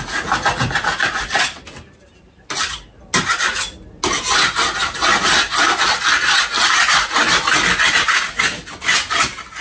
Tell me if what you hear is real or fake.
real